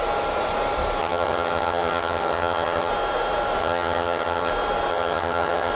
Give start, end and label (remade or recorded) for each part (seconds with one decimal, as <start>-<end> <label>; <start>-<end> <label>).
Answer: 0.0-1.0 recorded; 1.0-2.9 remade; 2.9-3.6 recorded; 3.6-4.5 remade; 4.5-4.9 recorded; 4.9-5.7 remade